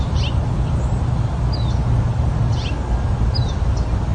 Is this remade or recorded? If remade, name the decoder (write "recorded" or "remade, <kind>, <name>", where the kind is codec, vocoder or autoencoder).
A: recorded